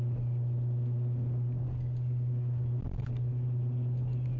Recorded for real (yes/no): yes